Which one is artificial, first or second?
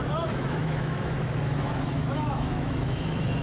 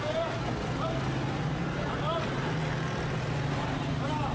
first